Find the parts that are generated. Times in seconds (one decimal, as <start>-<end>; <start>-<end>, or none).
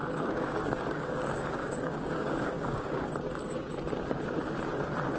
0.0-3.1